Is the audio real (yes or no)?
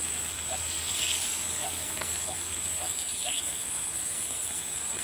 no